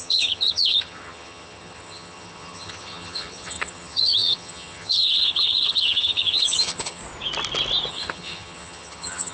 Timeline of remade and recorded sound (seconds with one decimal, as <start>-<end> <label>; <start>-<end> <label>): 0.0-7.0 remade; 7.0-7.9 recorded; 7.9-9.3 remade